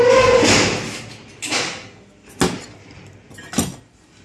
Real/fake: real